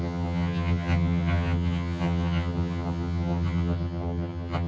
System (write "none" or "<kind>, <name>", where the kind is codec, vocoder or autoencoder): vocoder, HiFi-GAN